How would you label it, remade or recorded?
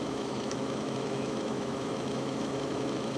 remade